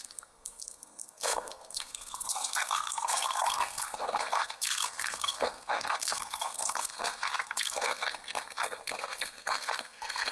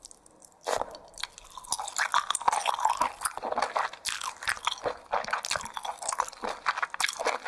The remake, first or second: first